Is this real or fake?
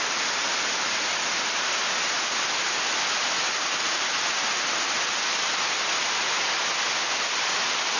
real